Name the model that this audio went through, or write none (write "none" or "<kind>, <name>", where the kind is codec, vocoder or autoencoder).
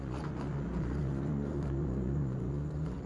vocoder, Vocos